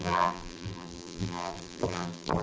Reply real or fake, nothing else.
fake